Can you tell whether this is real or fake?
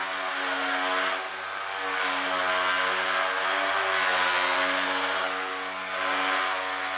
real